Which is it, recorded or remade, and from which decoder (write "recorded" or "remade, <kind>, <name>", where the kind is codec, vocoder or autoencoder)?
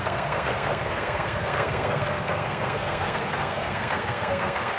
remade, codec, SNAC